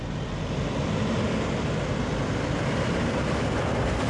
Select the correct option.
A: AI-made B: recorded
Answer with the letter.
B